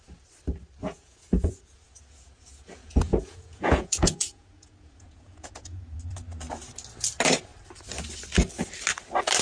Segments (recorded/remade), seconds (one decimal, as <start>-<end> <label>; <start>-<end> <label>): 0.0-0.8 recorded; 0.8-6.0 remade; 6.0-9.4 recorded